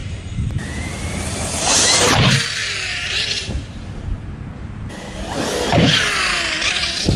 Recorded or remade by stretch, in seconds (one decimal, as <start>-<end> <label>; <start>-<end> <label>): 0.0-2.2 remade; 2.2-2.6 recorded; 2.6-5.2 remade; 5.2-7.2 recorded